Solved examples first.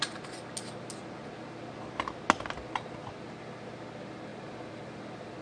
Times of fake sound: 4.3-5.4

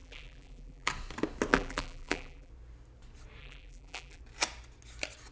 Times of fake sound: 0.0-0.9; 1.5-2.5; 3.4-4.2

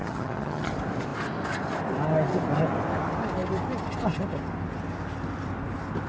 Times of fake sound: 0.0-0.7